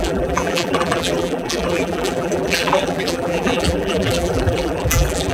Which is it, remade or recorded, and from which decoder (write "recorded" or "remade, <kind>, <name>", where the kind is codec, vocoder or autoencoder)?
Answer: remade, vocoder, BigVGAN v2